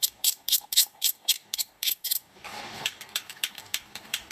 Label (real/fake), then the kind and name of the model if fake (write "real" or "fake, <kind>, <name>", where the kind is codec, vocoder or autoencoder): fake, codec, DAC